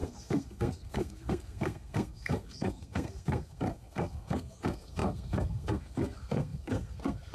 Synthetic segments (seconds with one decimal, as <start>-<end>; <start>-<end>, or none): 0.0-7.3